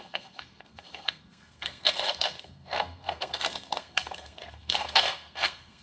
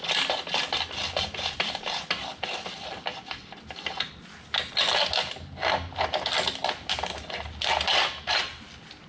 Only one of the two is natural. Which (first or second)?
second